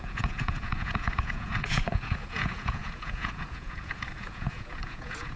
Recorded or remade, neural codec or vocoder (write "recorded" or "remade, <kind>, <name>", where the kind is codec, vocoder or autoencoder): remade, vocoder, Vocos